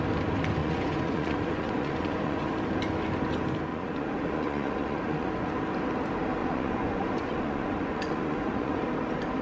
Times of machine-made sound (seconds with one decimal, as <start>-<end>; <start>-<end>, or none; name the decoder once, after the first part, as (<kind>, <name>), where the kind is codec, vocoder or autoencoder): 0.6-2.5 (vocoder, Vocos); 3.7-5.5; 6.4-8.8